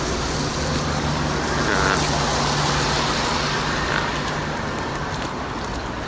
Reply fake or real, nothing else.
real